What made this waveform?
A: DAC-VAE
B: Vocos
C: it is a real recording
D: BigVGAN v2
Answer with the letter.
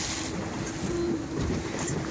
C